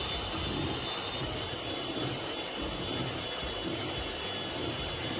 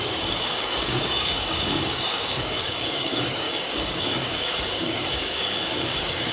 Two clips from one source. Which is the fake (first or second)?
second